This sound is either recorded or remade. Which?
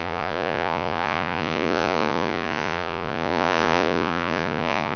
remade